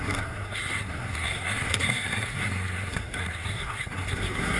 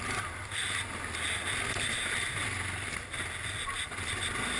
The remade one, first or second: first